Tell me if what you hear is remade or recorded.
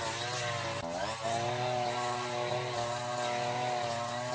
recorded